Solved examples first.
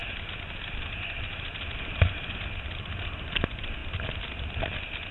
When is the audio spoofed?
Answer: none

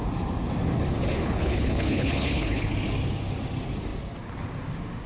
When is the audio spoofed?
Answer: 1.2-2.7 (codec, HILCodec)

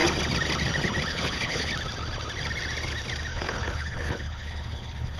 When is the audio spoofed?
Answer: 1.1-1.7 (codec, HILCodec); 3.3-5.2

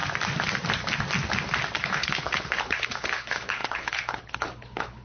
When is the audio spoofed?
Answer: 1.8-5.0 (codec, HILCodec)

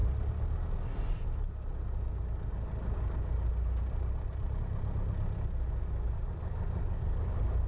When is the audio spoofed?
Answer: none

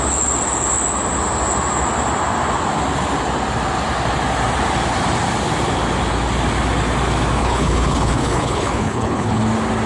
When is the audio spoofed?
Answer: 7.4-9.4 (codec, HILCodec)

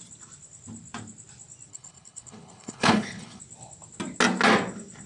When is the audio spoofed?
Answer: 1.7-3.4 (codec, HILCodec)

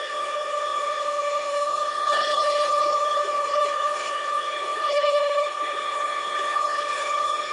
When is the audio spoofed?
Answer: 0.0-7.5 (codec, HILCodec)